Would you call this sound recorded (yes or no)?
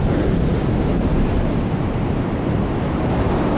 yes